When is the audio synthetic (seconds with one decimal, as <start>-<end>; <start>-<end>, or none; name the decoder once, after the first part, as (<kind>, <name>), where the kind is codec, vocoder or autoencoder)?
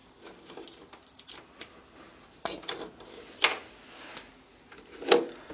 none